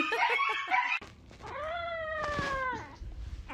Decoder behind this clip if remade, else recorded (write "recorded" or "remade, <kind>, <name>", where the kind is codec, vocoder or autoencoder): recorded